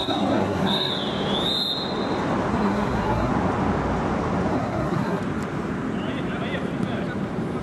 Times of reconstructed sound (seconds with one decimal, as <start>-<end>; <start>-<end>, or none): 0.0-0.9; 2.5-3.3; 4.5-5.2